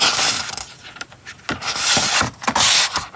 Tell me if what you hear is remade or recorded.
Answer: recorded